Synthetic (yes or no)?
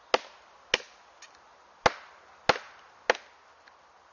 no